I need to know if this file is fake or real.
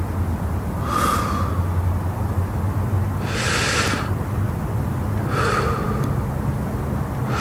real